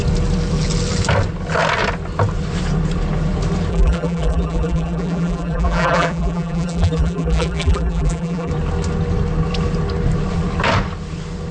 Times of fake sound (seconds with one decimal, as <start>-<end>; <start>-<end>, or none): 3.7-8.5